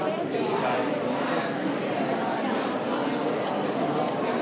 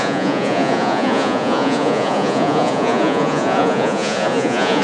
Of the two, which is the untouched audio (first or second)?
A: first